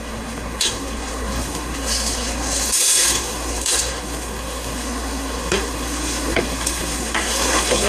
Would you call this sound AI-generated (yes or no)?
yes